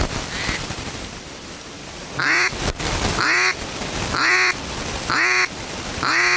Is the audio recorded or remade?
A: remade